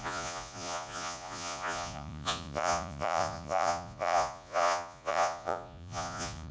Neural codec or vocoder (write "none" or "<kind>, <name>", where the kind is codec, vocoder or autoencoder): vocoder, Vocos